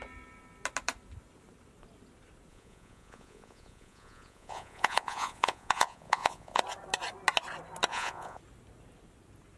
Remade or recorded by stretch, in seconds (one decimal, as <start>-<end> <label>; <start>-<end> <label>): 0.0-2.5 recorded; 2.5-6.6 remade; 6.6-7.9 recorded; 7.9-8.4 remade; 8.4-9.6 recorded